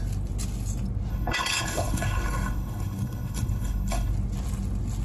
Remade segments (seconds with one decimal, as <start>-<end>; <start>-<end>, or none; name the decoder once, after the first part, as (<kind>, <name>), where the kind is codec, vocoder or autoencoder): 1.1-4.1 (codec, HILCodec)